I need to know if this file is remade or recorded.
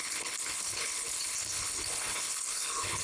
remade